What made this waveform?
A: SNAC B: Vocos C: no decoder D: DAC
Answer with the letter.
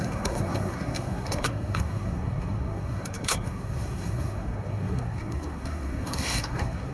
A